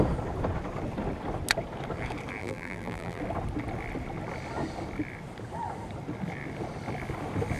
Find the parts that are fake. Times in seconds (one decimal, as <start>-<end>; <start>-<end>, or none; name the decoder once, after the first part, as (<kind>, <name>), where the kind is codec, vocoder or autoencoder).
2.4-3.2 (vocoder, BigVGAN v2)